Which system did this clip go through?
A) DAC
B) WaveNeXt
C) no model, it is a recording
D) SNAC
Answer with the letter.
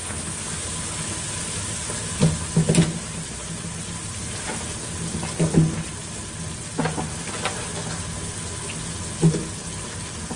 C